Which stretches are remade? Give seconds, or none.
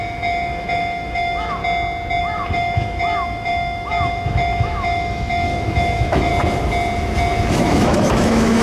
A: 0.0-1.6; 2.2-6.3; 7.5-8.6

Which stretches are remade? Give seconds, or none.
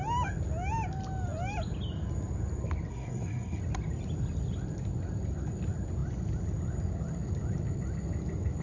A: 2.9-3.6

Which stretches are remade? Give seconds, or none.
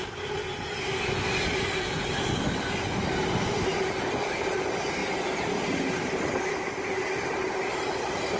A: none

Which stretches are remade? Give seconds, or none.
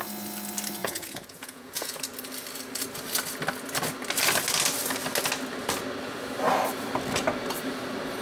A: 0.8-2.0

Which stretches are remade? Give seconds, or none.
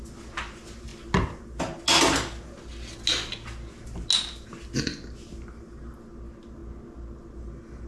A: none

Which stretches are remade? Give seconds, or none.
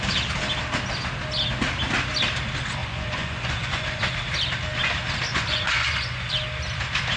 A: 2.8-4.0; 5.3-6.3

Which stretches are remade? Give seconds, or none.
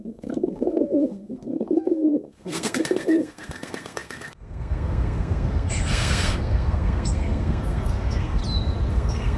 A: 0.0-8.4; 8.9-9.4